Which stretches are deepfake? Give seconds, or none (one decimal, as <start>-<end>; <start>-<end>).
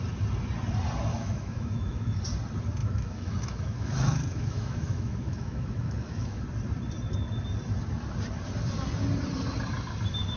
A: 1.1-2.2; 2.8-6.4